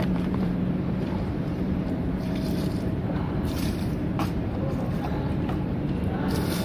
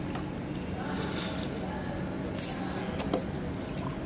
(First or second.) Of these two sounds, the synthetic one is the first